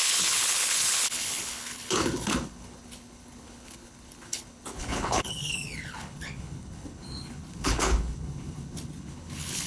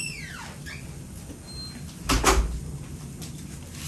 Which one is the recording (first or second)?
second